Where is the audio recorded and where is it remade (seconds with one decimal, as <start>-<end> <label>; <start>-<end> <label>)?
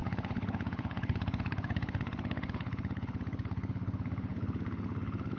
0.0-5.4 remade